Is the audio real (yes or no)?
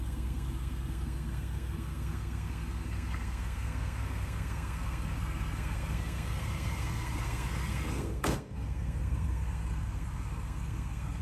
no